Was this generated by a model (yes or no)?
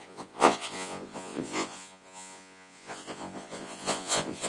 yes